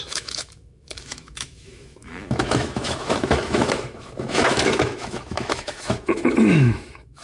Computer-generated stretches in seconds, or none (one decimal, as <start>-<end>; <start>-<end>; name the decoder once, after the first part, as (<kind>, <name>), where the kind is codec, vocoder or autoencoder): 0.0-7.2 (autoencoder, DAC-VAE)